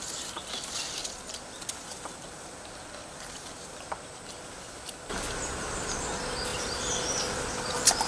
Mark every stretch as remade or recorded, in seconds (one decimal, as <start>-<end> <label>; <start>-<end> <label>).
0.0-1.0 recorded; 1.0-3.9 remade; 3.9-6.5 recorded; 6.5-8.1 remade